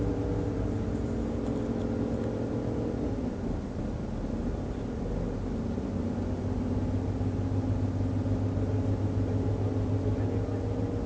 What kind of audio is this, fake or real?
real